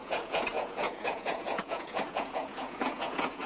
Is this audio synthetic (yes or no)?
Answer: yes